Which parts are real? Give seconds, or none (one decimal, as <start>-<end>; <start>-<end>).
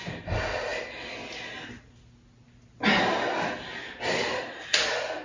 0.0-5.2